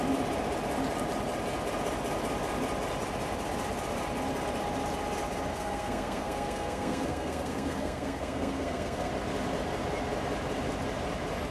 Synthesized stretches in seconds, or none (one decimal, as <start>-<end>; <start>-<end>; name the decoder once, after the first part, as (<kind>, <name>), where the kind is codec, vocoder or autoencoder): 5.5-9.1 (codec, SNAC)

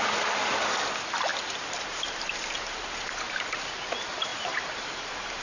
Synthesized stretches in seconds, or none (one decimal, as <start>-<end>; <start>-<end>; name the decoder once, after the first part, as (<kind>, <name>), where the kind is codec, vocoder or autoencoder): 1.3-3.5 (vocoder, BigVGAN v2); 4.3-5.4